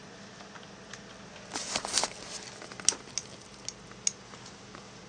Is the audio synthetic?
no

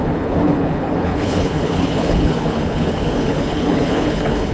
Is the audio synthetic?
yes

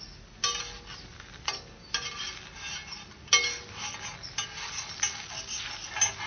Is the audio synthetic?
no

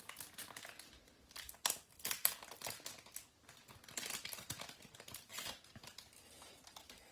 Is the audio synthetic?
no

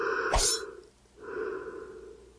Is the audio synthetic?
no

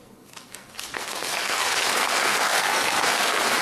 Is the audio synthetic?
yes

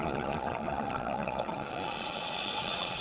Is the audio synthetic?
yes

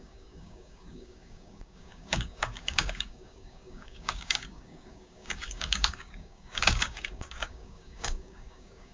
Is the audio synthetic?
yes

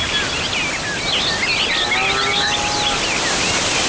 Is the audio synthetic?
no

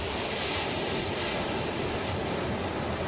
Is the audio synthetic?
no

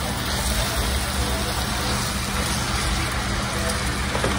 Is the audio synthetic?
no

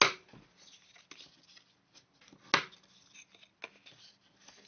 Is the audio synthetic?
no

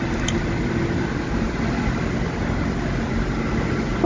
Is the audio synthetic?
no